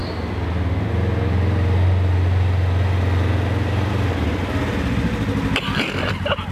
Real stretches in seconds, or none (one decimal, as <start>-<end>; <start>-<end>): 0.0-6.5